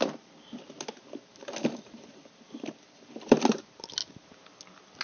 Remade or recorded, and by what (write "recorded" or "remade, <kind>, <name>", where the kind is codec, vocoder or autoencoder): recorded